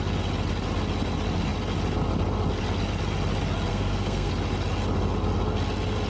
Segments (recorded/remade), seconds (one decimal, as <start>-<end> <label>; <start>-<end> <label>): 0.0-3.7 recorded; 3.7-4.3 remade; 4.3-6.1 recorded